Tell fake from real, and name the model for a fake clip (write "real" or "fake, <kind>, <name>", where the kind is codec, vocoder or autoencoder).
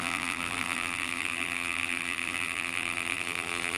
fake, vocoder, BigVGAN v2